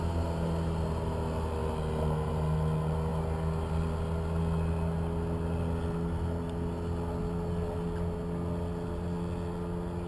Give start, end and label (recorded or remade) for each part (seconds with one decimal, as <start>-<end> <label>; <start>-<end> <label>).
0.0-10.1 recorded